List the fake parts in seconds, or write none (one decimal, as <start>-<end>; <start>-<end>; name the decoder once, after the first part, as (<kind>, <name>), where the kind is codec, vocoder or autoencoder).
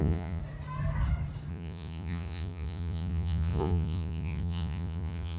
0.0-0.4 (vocoder, Vocos); 1.5-5.4